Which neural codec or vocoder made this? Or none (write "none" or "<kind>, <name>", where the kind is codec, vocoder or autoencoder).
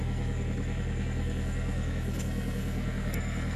codec, SNAC